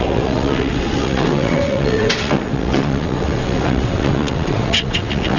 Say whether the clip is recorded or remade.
remade